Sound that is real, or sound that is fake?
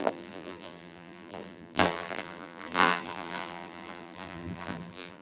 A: fake